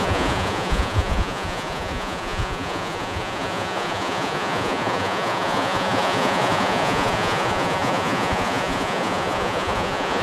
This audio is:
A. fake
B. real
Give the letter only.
A